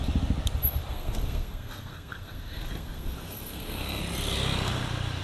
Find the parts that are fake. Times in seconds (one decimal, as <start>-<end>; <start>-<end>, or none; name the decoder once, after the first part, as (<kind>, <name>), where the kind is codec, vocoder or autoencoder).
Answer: 0.9-4.0 (codec, SNAC)